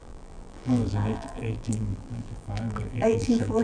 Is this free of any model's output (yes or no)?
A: no